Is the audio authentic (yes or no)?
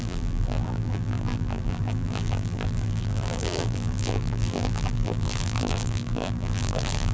no